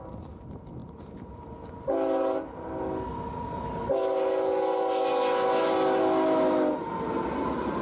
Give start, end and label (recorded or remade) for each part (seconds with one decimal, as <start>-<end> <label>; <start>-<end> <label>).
0.0-0.8 recorded; 0.8-1.3 remade; 1.3-7.8 recorded

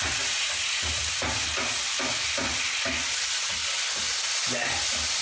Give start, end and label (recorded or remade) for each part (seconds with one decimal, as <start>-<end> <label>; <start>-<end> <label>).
0.0-5.2 recorded

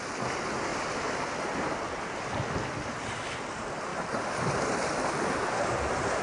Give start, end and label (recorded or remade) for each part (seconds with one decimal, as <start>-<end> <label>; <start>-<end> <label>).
0.0-3.9 recorded; 3.9-5.1 remade; 5.1-6.2 recorded

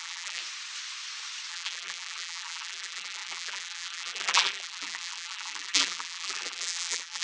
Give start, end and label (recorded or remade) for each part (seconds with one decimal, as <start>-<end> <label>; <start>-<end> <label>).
0.0-0.4 remade; 0.4-1.5 recorded; 1.5-7.2 remade

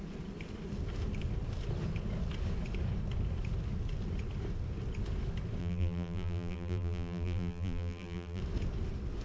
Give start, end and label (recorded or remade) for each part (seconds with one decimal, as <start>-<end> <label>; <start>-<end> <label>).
0.0-5.6 recorded; 5.6-8.4 remade; 8.4-9.2 recorded